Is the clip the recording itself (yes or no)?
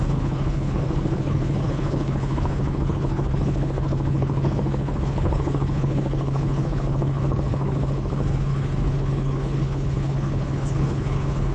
no